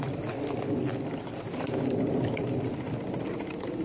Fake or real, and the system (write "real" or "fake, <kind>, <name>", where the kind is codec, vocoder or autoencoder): real